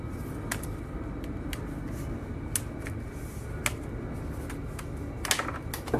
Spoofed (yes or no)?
no